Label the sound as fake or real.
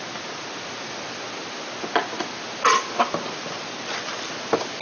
real